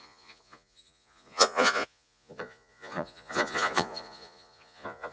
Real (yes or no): no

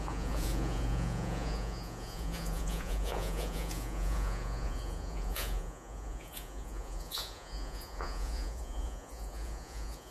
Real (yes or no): no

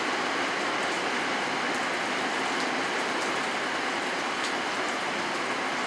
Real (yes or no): yes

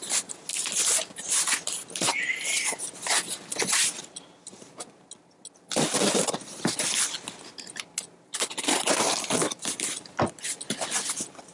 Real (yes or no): yes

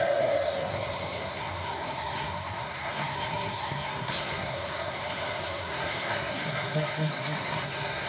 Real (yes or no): no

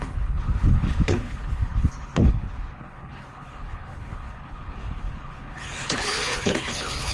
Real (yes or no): no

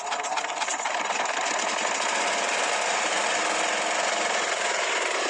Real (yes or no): yes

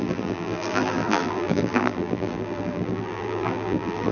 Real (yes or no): no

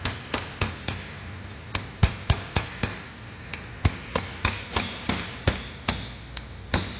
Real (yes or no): yes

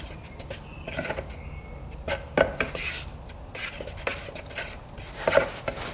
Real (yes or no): yes